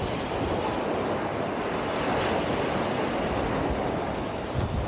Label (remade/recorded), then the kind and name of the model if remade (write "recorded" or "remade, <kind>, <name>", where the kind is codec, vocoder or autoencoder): recorded